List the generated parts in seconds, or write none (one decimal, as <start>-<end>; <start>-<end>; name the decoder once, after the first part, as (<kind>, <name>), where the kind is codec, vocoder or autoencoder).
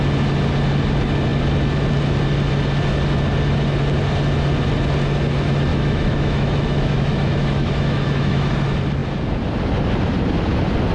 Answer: 5.7-8.5 (autoencoder, DAC-VAE)